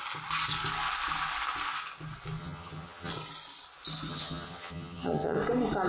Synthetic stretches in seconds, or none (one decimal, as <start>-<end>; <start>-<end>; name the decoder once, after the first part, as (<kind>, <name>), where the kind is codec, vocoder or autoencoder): 2.4-3.1 (vocoder, HiFi-GAN); 4.1-5.4